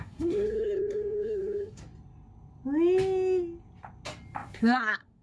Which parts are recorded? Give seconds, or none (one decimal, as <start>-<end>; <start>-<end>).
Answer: 1.8-4.6